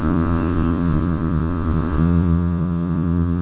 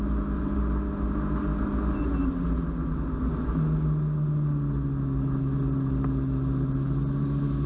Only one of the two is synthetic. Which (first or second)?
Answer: first